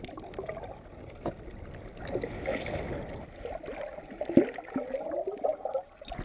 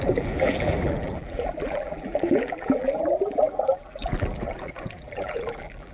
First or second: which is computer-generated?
second